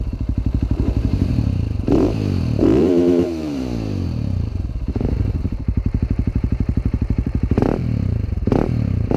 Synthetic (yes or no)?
yes